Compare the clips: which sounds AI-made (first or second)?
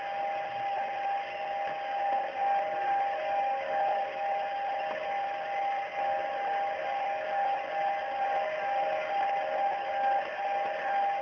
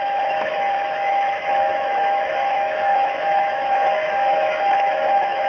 second